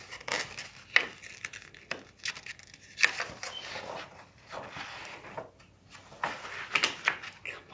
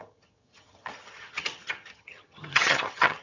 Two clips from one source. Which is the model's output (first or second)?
second